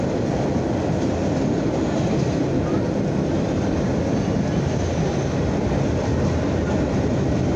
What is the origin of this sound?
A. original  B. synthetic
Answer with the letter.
A